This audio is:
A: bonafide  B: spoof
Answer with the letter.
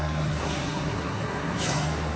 B